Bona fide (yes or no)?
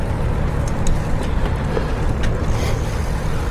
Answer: yes